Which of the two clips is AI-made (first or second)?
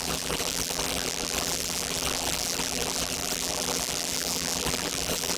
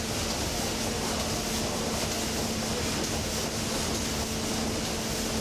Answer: first